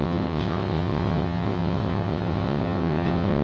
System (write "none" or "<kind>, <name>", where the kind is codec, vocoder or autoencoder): vocoder, WaveNeXt